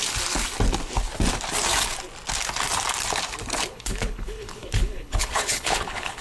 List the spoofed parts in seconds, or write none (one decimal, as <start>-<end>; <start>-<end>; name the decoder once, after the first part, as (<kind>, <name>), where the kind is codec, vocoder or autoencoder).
3.7-6.2 (codec, HILCodec)